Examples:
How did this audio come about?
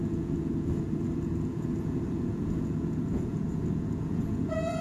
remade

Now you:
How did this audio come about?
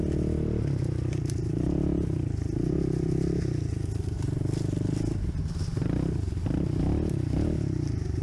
recorded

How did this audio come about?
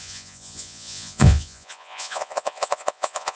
remade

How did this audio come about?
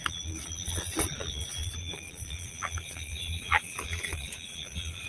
remade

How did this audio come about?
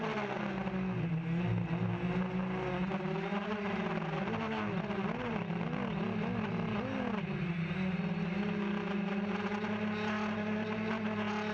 recorded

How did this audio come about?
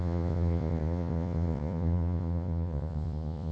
remade